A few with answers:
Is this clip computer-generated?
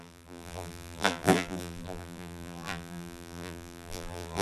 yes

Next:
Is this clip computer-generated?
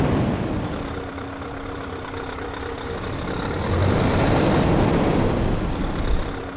yes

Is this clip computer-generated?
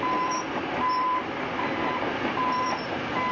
yes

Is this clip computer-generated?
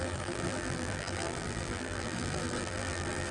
yes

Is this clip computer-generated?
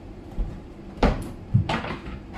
yes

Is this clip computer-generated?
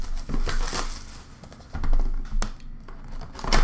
no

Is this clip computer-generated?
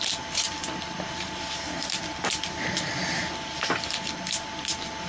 no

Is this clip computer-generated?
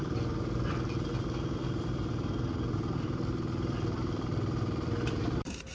yes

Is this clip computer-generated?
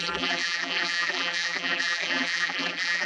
yes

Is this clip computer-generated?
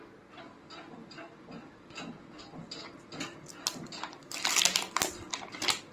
no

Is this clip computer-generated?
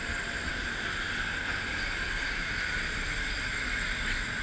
yes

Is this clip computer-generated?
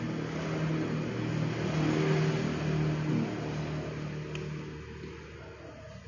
no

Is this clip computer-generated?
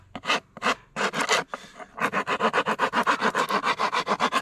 no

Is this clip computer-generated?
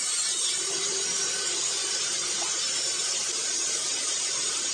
yes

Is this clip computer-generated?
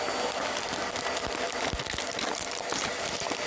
no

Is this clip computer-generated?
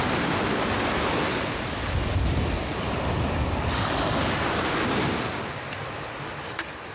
no